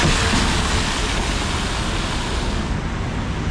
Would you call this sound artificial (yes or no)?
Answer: no